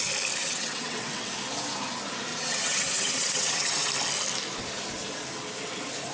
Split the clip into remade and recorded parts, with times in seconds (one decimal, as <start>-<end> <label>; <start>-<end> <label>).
0.0-0.4 recorded; 0.4-1.4 remade; 1.4-2.3 recorded; 2.3-3.9 remade; 3.9-6.1 recorded